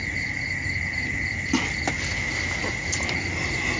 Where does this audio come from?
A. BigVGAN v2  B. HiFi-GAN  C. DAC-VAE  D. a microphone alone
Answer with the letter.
D